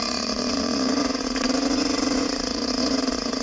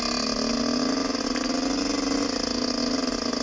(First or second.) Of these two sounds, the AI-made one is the first